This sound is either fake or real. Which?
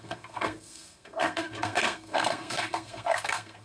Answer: fake